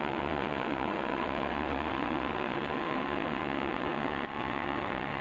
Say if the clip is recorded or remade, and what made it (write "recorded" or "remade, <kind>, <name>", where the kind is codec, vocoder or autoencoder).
remade, vocoder, WaveNeXt